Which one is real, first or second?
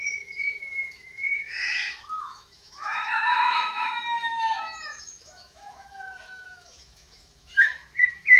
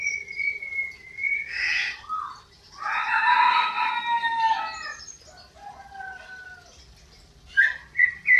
second